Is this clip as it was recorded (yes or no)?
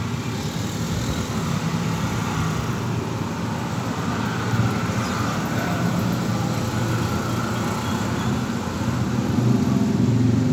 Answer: yes